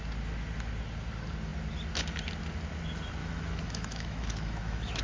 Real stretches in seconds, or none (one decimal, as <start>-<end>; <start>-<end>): 0.0-3.2